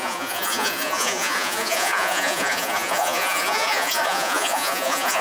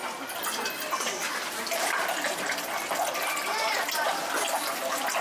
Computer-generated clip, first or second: first